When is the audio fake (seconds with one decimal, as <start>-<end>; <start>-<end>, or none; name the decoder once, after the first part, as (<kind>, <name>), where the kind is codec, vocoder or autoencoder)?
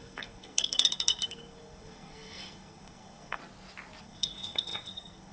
0.0-3.4 (codec, SNAC); 4.0-5.3